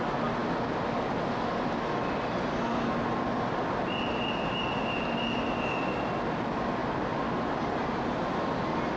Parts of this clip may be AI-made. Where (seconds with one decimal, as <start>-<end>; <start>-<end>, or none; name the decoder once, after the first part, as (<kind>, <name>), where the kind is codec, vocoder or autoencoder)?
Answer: 6.8-8.2 (vocoder, BigVGAN v2)